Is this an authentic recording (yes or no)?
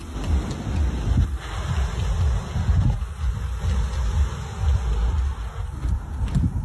yes